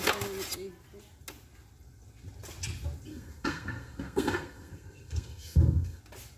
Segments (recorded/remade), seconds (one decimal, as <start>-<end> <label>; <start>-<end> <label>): 0.0-3.1 recorded; 3.1-6.0 remade; 6.0-6.4 recorded